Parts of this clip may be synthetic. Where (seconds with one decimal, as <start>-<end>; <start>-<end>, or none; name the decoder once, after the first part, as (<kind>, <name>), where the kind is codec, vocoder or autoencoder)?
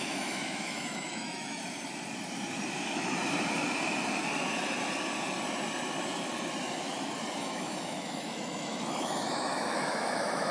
0.0-1.6 (autoencoder, DAC-VAE); 2.8-3.2; 7.4-10.5